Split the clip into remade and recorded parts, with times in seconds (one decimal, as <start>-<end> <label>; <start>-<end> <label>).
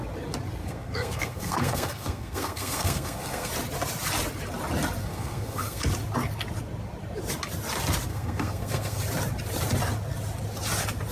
0.0-0.6 recorded; 0.6-3.5 remade; 3.5-5.0 recorded; 5.0-5.8 remade; 5.8-8.1 recorded; 8.1-9.0 remade; 9.0-11.1 recorded